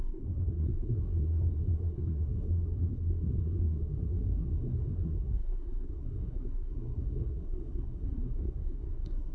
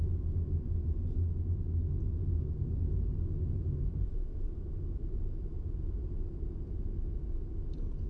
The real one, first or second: second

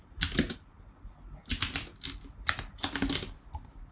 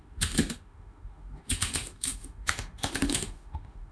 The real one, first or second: first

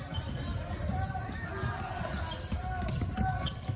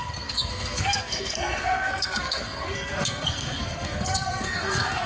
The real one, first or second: first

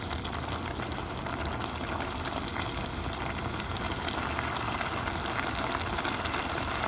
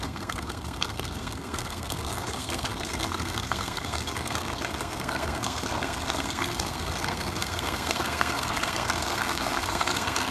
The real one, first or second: first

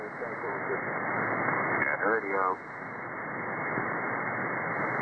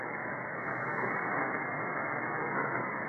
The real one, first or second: first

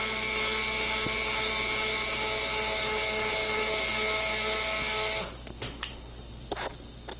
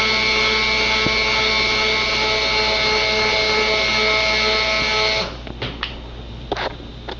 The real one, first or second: second